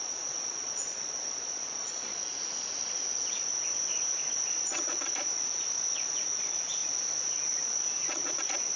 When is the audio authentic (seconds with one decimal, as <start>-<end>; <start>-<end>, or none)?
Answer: 2.2-3.7